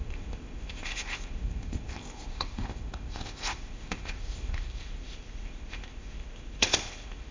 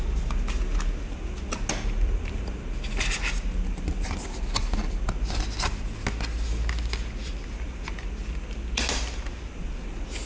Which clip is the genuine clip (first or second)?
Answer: second